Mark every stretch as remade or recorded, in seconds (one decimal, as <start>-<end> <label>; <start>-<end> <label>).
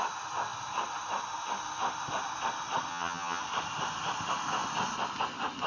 0.0-2.9 recorded; 2.9-3.4 remade; 3.4-5.7 recorded